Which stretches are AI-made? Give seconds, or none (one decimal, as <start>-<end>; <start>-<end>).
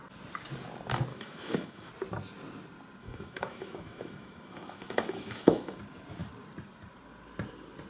1.1-1.9; 3.0-5.8